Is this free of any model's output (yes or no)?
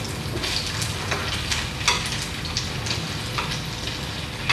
yes